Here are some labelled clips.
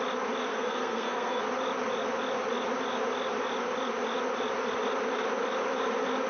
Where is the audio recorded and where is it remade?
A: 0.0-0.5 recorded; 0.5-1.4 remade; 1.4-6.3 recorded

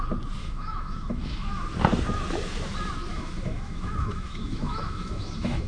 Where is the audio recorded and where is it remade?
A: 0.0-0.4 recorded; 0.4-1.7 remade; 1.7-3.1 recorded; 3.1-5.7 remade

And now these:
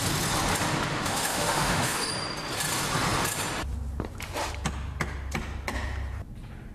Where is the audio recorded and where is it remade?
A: 0.0-0.9 recorded; 0.9-2.1 remade; 2.1-6.7 recorded